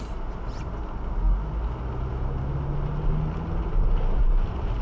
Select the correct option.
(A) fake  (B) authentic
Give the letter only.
B